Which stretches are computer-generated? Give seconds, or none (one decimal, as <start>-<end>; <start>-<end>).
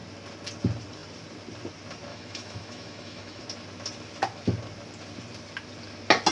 2.1-3.4